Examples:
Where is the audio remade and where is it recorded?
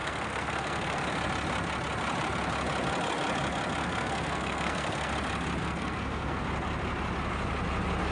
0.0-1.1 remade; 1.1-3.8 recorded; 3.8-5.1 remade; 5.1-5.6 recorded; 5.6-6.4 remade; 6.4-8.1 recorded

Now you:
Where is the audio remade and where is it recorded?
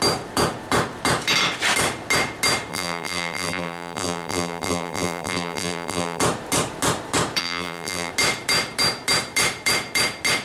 0.0-2.7 recorded; 2.7-6.2 remade; 6.2-7.4 recorded; 7.4-8.1 remade; 8.1-10.4 recorded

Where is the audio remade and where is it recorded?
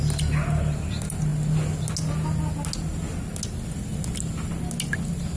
0.0-5.4 recorded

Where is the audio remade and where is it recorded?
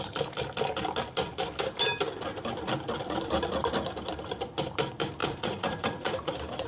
0.0-5.2 recorded; 5.2-6.3 remade; 6.3-6.7 recorded